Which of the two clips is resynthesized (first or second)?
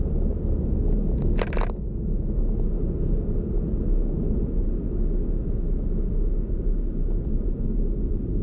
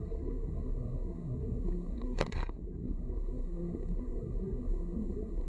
second